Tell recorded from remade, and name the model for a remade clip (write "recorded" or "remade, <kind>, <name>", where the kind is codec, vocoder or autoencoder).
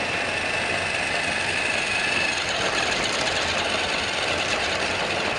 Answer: recorded